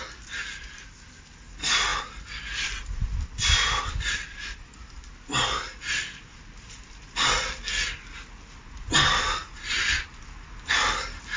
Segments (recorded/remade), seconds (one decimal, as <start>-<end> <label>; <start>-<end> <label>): 0.0-11.4 recorded